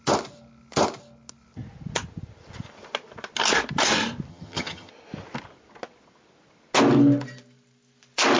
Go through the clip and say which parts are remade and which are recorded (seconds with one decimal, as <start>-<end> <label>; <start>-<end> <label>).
0.0-4.3 recorded; 4.3-4.9 remade; 4.9-8.4 recorded